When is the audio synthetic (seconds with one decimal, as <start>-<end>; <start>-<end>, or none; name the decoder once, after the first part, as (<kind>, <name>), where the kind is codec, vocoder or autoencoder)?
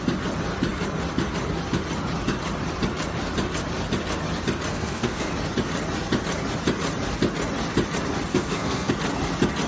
4.7-5.3 (codec, SNAC); 8.3-8.9